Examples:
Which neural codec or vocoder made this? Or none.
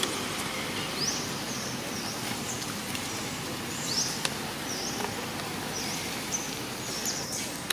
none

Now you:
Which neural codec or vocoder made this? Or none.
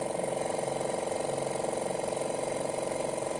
none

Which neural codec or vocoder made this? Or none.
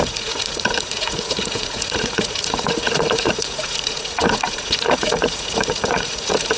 vocoder, Vocos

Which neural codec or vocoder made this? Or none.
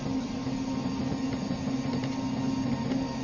none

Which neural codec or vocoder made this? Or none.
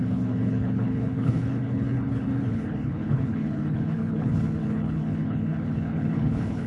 codec, HILCodec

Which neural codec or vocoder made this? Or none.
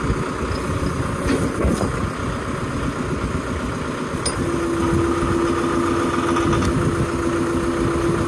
none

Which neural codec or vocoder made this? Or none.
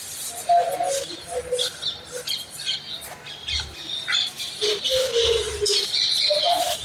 none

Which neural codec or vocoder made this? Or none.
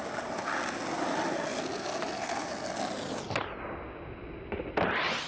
none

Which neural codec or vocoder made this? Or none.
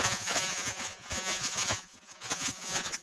vocoder, Vocos